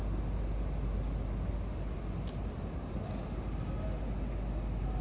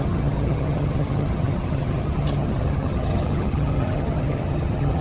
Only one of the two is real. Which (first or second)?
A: first